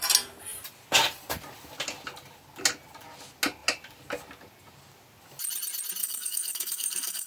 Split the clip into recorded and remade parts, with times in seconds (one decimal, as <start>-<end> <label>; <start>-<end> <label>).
0.0-6.0 recorded; 6.0-7.3 remade